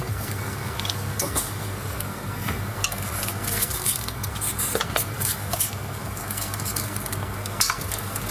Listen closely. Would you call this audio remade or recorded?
remade